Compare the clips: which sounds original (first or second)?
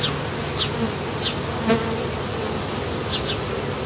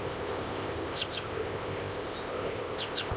first